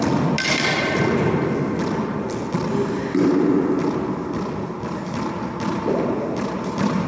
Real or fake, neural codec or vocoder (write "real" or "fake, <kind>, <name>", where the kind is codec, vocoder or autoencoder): real